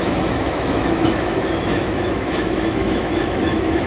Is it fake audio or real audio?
fake